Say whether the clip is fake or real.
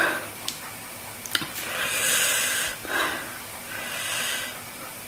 real